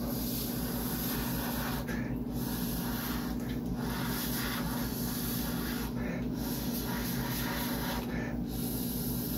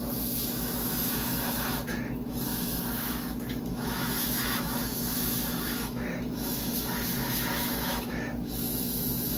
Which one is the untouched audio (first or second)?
first